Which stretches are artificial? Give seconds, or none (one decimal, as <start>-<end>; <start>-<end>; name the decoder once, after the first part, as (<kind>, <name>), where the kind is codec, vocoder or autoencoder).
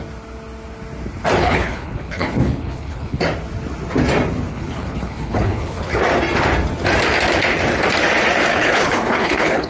1.4-3.2 (codec, HILCodec); 4.5-6.0; 8.5-9.7